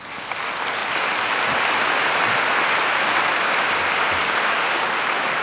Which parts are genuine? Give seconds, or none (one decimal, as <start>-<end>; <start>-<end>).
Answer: 0.0-4.2; 4.9-5.4